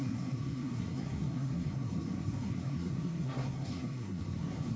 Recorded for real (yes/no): no